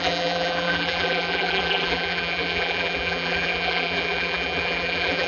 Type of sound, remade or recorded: remade